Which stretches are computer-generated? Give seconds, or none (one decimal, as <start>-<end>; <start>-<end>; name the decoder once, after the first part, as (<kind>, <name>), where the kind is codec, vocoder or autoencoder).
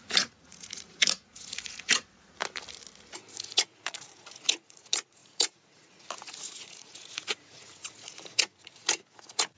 0.0-2.4 (vocoder, Vocos); 3.3-9.6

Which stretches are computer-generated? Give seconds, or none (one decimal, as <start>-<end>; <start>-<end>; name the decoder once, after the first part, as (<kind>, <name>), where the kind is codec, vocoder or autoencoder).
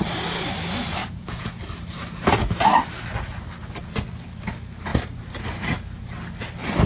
1.0-1.6 (vocoder, Vocos)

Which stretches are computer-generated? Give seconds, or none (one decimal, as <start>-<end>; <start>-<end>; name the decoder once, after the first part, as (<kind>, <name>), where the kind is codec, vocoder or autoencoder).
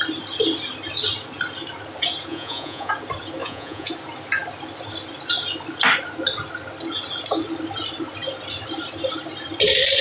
2.3-2.9 (vocoder, Vocos); 3.4-3.9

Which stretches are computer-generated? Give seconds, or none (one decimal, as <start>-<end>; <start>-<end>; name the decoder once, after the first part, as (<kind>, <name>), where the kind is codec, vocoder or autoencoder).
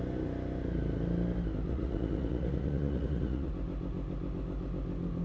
1.7-3.5 (vocoder, Vocos)